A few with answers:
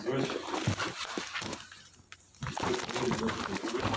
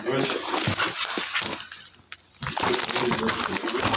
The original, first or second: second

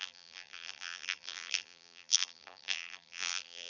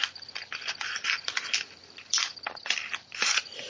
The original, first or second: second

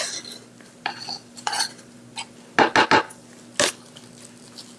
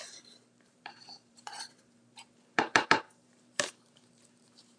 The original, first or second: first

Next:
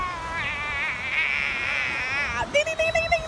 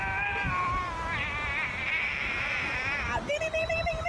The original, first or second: first